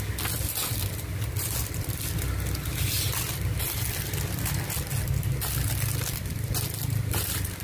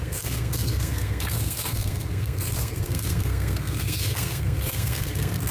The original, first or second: first